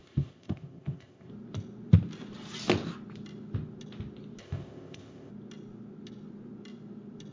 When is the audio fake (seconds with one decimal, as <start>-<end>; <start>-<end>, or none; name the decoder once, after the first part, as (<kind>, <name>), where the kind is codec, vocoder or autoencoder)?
0.0-1.3 (codec, ZipCodec); 4.4-5.3